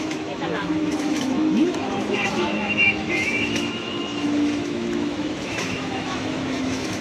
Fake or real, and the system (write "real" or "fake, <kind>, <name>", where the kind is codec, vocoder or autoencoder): fake, autoencoder, DAC-VAE